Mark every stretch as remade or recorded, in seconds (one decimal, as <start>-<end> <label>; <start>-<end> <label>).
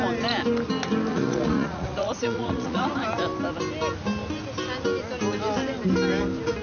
0.0-1.1 recorded; 1.1-2.9 remade; 2.9-6.6 recorded